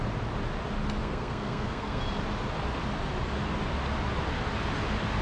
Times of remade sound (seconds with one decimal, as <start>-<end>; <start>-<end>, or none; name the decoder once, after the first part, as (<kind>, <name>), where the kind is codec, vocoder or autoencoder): 1.0-2.0 (codec, SNAC)